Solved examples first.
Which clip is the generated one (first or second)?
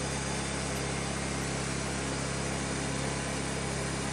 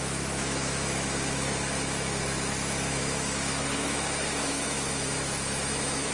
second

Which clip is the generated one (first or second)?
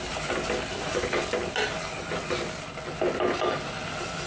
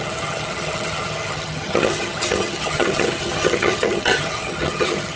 second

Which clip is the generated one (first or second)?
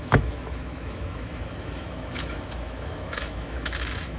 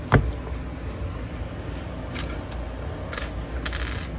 first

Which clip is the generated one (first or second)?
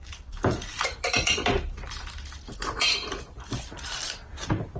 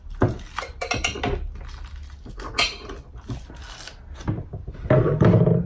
first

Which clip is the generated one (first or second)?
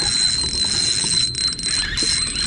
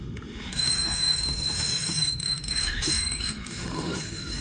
second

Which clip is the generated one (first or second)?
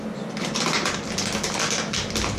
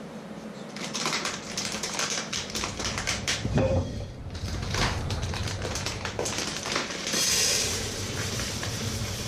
second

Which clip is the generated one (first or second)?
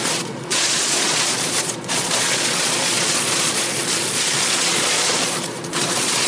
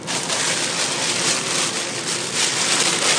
first